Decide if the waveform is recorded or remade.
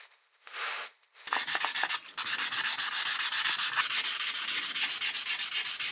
recorded